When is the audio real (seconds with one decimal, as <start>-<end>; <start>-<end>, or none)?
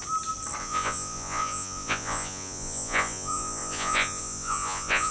0.0-0.6